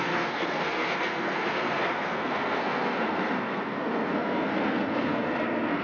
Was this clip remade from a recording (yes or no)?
yes